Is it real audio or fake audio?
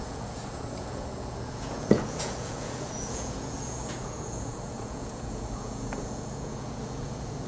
fake